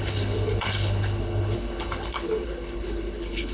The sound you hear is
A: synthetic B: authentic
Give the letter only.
A